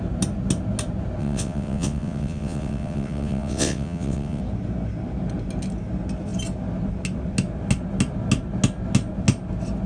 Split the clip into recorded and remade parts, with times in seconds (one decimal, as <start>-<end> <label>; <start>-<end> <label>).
0.0-1.2 recorded; 1.2-4.4 remade; 4.4-9.9 recorded